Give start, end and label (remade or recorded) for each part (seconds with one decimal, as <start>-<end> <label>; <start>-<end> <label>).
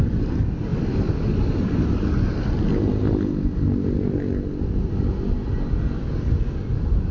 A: 0.0-7.1 recorded